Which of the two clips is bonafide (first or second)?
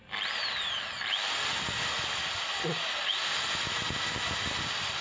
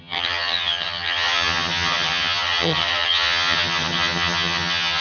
first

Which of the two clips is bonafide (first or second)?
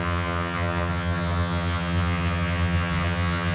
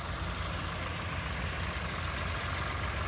second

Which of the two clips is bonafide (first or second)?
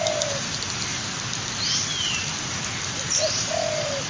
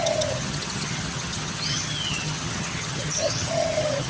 first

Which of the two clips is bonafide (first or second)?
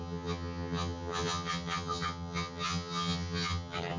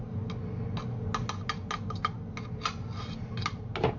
second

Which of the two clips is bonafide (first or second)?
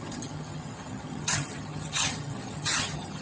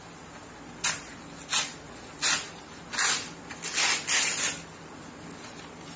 second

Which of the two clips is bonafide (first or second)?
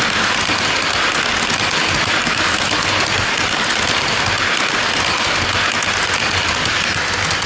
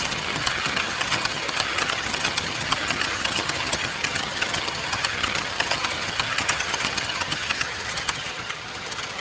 first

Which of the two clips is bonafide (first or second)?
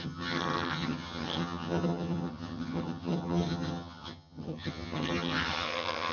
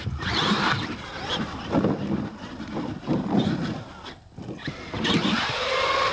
second